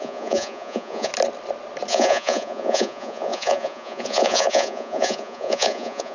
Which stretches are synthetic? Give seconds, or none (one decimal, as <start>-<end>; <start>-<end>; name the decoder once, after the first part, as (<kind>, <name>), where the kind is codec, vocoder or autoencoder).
0.0-1.1 (vocoder, Vocos); 1.9-6.1